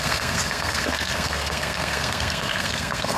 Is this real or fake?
fake